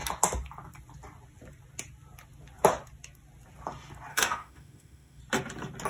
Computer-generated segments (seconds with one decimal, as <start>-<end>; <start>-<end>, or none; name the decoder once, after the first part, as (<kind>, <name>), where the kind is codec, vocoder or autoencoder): 4.1-5.2 (autoencoder, DAC-VAE)